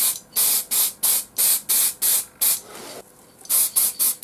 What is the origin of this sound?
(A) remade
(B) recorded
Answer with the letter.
B